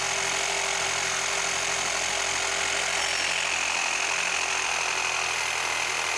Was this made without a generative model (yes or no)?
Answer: yes